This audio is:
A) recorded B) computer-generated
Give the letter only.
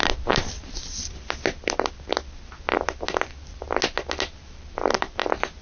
A